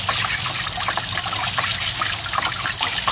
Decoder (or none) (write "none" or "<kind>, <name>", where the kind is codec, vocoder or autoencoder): none